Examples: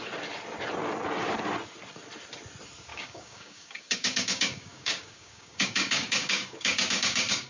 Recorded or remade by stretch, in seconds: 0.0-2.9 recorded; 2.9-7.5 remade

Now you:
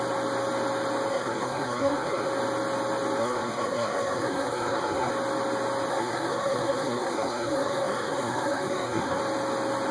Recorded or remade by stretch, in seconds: 0.0-1.1 recorded; 1.1-2.3 remade; 2.3-3.2 recorded; 3.2-5.1 remade; 5.1-5.9 recorded; 5.9-9.2 remade; 9.2-9.9 recorded

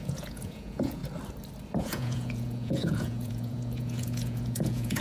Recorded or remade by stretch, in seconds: 0.0-1.0 remade; 1.0-1.8 recorded; 1.8-5.0 remade

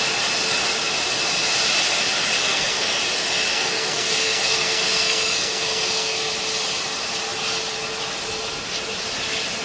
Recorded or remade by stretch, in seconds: 0.0-2.4 recorded; 2.4-3.0 remade; 3.0-3.5 recorded; 3.5-6.3 remade; 6.3-9.6 recorded

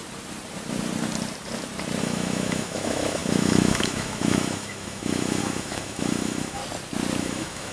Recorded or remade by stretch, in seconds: 0.0-2.0 recorded; 2.0-6.6 remade; 6.6-7.2 recorded; 7.2-7.7 remade

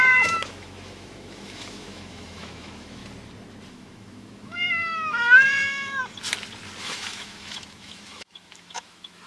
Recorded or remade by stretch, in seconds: 0.0-3.0 remade; 3.0-3.7 recorded; 3.7-6.0 remade; 6.0-6.8 recorded; 6.8-9.3 remade